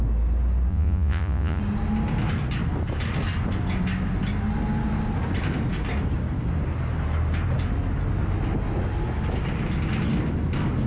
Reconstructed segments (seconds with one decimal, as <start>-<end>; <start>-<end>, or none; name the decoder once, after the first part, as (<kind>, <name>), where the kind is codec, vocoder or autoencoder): 0.7-1.6 (vocoder, Vocos)